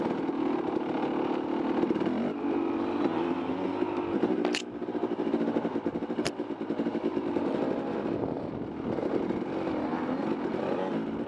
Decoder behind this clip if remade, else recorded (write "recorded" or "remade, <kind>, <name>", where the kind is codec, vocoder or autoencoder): recorded